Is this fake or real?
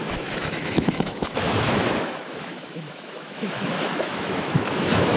fake